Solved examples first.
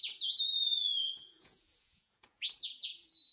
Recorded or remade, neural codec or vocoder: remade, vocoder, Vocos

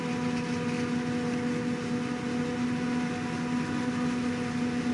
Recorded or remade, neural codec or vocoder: recorded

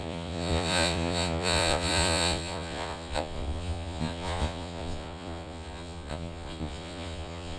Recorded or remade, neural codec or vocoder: remade, vocoder, Vocos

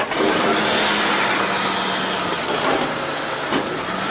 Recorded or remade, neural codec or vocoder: recorded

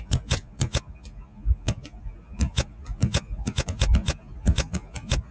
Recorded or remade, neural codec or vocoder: remade, vocoder, Vocos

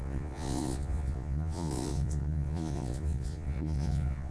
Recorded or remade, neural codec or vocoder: remade, vocoder, Vocos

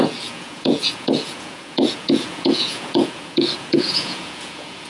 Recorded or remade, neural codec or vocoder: remade, vocoder, Vocos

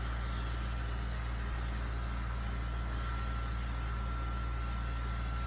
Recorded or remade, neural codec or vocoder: recorded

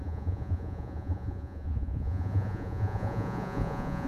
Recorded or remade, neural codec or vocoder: remade, vocoder, Vocos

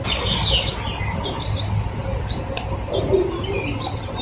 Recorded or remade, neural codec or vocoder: recorded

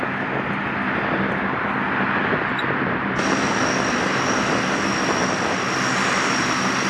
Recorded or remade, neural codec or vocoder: recorded